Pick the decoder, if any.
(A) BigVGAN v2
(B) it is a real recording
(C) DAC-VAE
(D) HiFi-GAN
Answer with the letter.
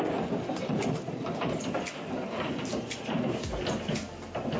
A